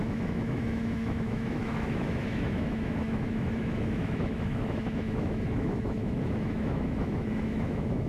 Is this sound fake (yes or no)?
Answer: yes